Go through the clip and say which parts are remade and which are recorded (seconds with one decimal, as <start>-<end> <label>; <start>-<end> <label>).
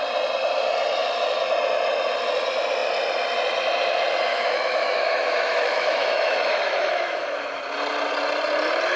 0.0-4.3 recorded; 4.3-7.6 remade; 7.6-9.0 recorded